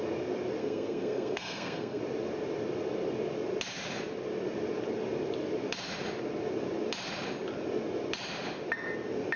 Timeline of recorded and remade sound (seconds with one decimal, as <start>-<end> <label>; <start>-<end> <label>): 0.0-0.6 recorded; 0.6-2.0 remade; 2.0-9.4 recorded

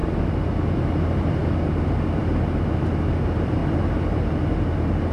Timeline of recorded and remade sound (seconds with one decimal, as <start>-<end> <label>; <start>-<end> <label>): 0.0-5.1 recorded

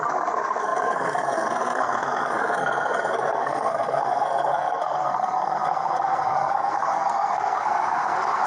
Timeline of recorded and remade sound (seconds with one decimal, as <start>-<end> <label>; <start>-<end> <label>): 0.0-8.5 remade

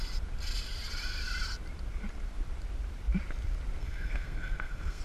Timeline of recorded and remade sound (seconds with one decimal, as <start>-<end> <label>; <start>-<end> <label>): 0.0-3.8 recorded; 3.8-5.0 remade

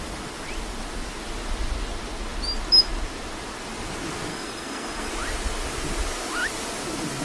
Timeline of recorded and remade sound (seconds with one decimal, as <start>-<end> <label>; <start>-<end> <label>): 0.0-4.3 recorded; 4.3-5.1 remade; 5.1-7.2 recorded

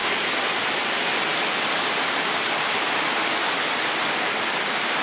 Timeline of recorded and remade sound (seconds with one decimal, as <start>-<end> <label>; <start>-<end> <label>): 0.0-5.0 recorded

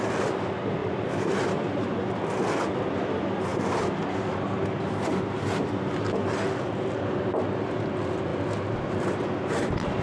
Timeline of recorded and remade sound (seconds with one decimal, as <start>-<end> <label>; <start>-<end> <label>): 0.0-10.0 recorded

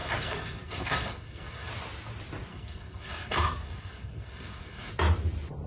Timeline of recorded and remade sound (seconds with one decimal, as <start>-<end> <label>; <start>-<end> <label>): 0.0-1.7 remade; 1.7-2.5 recorded; 2.5-4.9 remade; 4.9-5.7 recorded